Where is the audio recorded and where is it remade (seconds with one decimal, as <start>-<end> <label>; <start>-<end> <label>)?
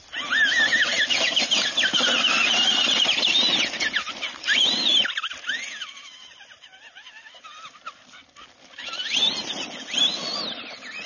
0.0-11.1 recorded